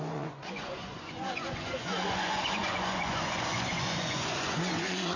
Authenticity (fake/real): fake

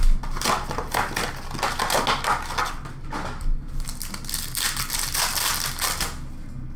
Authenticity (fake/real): real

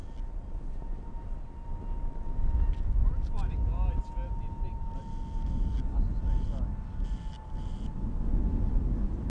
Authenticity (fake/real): real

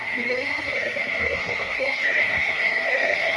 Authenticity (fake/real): fake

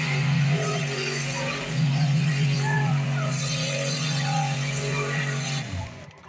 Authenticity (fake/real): fake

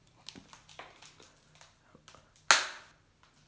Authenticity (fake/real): real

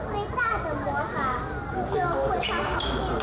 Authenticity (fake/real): real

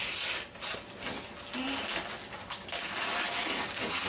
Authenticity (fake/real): real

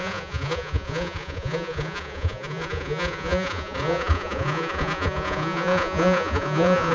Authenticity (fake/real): fake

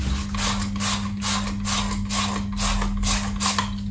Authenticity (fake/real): real